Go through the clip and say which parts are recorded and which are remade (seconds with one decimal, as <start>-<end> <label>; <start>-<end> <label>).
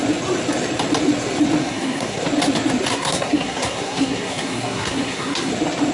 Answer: 0.0-1.6 recorded; 1.6-2.2 remade; 2.2-2.9 recorded; 2.9-5.5 remade; 5.5-5.9 recorded